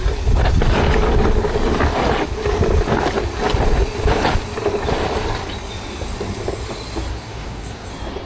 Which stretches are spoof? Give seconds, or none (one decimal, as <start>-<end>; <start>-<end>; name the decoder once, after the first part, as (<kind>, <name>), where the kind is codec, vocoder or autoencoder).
7.1-7.9 (codec, DAC)